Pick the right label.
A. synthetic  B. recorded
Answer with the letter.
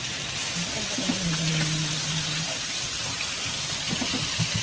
B